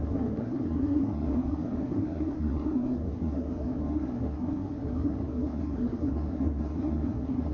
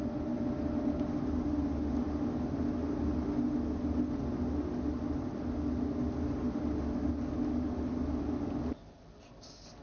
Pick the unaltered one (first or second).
second